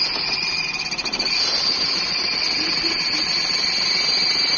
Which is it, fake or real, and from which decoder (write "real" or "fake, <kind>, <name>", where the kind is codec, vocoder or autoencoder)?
real